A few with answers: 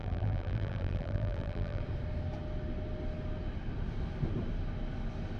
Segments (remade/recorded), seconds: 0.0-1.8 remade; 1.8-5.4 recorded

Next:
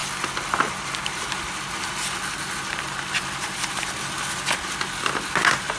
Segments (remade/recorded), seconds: 0.0-5.8 recorded

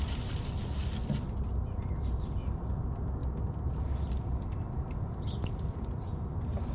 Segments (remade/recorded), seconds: 0.0-6.7 recorded

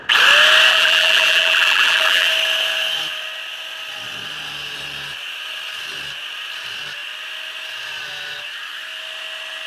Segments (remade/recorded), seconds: 0.0-0.7 recorded; 0.7-2.3 remade; 2.3-9.7 recorded

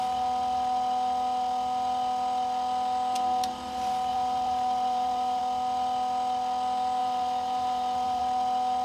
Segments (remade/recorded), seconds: 0.0-4.1 recorded; 4.1-5.4 remade; 5.4-7.0 recorded; 7.0-8.2 remade; 8.2-8.8 recorded

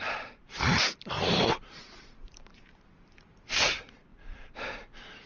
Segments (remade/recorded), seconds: 0.0-4.1 remade; 4.1-5.3 recorded